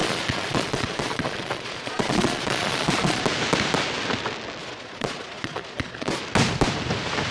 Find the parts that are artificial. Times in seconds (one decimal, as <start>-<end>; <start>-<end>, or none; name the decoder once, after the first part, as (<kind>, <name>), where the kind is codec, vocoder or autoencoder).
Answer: 0.0-3.2 (vocoder, Vocos); 4.6-6.2